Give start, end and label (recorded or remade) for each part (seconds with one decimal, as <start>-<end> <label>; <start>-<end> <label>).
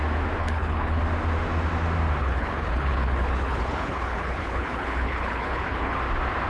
0.0-0.4 recorded; 0.4-1.0 remade; 1.0-2.2 recorded; 2.2-6.0 remade; 6.0-6.5 recorded